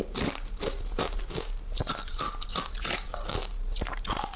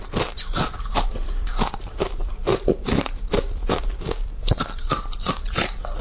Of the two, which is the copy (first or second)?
second